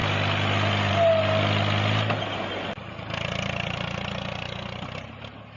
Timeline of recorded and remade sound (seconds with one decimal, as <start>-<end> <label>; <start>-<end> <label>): 0.0-5.6 recorded